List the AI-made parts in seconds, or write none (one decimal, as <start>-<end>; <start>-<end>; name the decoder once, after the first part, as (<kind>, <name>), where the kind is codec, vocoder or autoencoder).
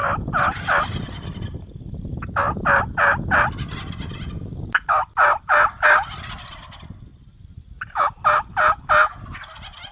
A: none